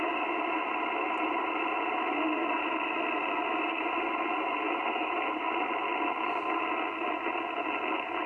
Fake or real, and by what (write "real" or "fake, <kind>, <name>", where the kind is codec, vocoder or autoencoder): real